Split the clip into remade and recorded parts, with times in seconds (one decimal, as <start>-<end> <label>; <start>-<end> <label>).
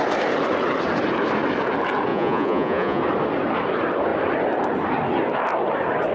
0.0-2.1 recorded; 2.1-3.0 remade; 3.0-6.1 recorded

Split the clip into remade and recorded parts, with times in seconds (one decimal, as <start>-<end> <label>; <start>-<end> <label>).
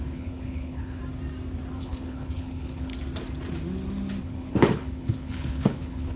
0.0-1.0 remade; 1.0-1.8 recorded; 1.8-2.9 remade; 2.9-4.2 recorded; 4.2-6.2 remade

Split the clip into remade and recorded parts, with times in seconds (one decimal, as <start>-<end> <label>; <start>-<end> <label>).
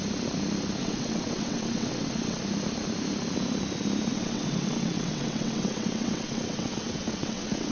0.0-0.8 recorded; 0.8-2.4 remade; 2.4-4.1 recorded; 4.1-7.7 remade